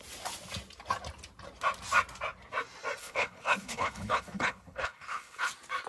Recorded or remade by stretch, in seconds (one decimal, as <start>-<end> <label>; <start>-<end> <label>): 0.0-3.0 recorded; 3.0-5.5 remade; 5.5-5.9 recorded